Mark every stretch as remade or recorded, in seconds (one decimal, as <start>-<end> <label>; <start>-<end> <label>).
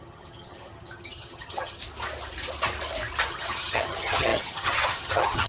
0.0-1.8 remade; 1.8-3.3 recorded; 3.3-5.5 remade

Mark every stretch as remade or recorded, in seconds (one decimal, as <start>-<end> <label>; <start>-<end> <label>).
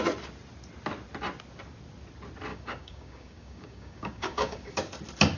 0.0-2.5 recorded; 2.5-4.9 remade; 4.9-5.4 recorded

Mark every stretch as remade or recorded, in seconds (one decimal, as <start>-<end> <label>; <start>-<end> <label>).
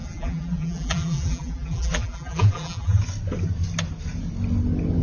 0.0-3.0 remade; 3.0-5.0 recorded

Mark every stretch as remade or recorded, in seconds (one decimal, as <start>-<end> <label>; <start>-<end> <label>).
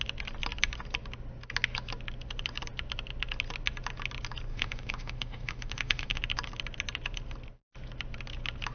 0.0-4.5 recorded; 4.5-6.2 remade; 6.2-8.7 recorded